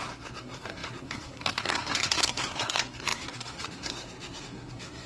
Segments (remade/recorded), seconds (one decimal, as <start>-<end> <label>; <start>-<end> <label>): 0.0-5.1 remade